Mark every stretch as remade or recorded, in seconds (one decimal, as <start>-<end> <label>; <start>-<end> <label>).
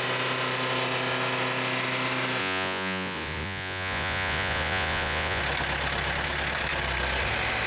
0.0-2.4 recorded; 2.4-5.4 remade; 5.4-7.7 recorded